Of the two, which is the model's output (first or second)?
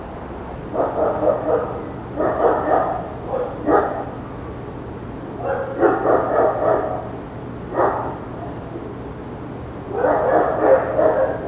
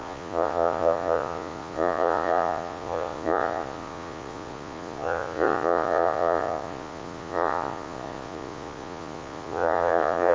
second